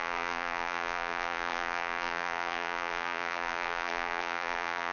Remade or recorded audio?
remade